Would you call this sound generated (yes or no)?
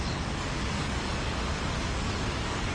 yes